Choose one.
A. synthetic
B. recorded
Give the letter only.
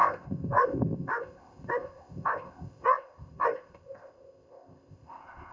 A